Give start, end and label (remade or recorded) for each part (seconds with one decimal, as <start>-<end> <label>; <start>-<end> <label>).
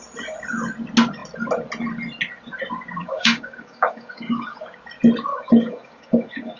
0.0-3.0 recorded; 3.0-4.8 remade; 4.8-5.3 recorded; 5.3-6.6 remade